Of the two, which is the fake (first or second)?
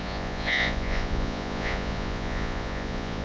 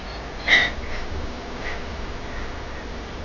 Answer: first